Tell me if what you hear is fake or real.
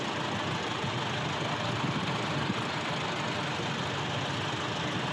real